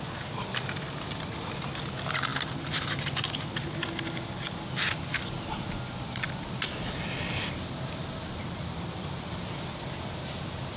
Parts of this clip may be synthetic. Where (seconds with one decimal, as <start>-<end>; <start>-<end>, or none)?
none